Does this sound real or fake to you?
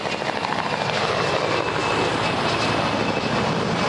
real